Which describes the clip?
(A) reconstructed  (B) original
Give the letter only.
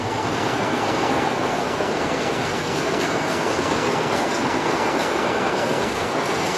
A